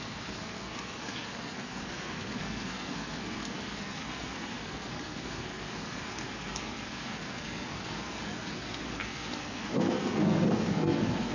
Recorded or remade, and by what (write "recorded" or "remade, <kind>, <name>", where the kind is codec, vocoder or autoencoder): remade, codec, SNAC